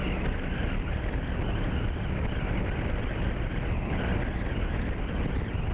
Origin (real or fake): real